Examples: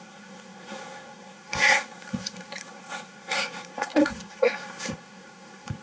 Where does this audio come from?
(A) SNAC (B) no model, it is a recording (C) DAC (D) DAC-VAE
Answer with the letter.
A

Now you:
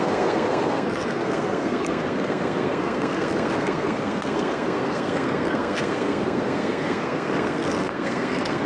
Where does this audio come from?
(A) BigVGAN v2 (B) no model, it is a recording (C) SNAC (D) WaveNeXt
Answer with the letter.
C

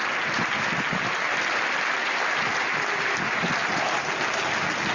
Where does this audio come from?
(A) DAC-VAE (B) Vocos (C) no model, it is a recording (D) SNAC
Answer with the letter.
C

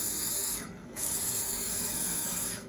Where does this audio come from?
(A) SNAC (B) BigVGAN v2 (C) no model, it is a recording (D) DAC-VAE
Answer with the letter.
A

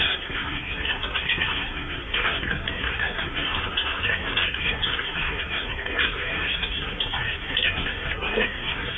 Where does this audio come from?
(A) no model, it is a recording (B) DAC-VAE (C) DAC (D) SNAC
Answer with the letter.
D